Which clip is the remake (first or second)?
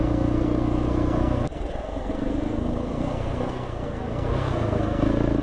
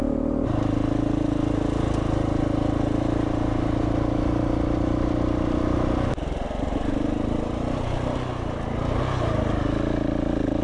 first